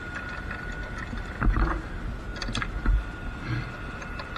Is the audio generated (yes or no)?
no